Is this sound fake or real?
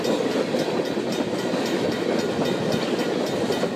real